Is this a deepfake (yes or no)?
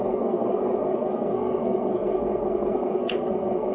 yes